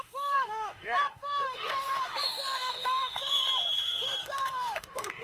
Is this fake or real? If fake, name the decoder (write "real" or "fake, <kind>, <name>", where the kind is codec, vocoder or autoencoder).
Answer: fake, autoencoder, DAC-VAE